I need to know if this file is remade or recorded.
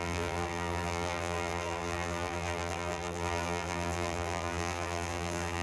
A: remade